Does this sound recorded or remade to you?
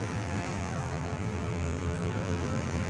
remade